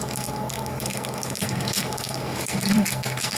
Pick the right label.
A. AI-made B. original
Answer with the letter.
A